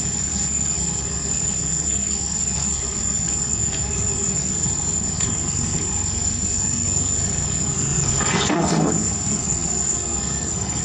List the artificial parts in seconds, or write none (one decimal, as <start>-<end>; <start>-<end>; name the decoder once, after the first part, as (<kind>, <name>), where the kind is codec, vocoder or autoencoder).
0.0-10.8 (codec, SNAC)